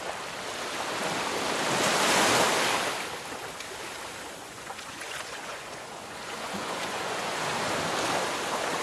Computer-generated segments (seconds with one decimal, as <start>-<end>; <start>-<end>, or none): 4.4-7.5